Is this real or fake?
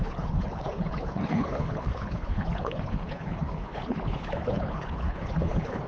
fake